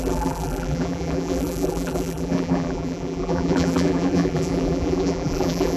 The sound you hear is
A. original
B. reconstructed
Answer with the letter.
B